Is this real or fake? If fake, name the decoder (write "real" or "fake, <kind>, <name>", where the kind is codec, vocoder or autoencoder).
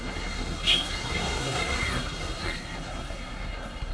fake, codec, SNAC